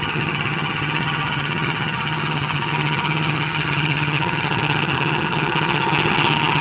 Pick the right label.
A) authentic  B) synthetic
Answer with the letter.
B